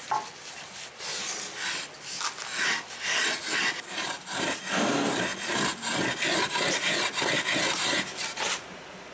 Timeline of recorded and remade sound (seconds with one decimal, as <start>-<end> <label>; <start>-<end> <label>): 0.0-9.1 recorded